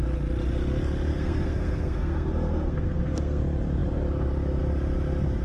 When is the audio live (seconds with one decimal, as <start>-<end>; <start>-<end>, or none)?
0.0-1.1; 3.4-5.4